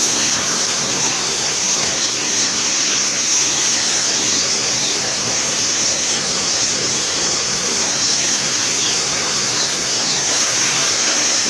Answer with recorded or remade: remade